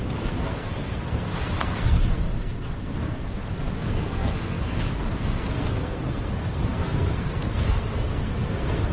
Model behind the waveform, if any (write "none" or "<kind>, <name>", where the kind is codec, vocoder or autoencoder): codec, SNAC